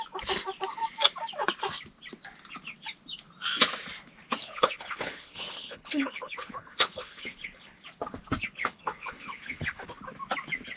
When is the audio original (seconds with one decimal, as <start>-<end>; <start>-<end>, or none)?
0.0-4.4; 7.8-8.6; 10.0-10.8